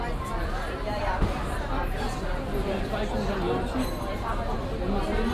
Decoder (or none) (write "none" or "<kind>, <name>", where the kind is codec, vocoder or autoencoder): none